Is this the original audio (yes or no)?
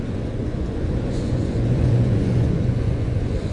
no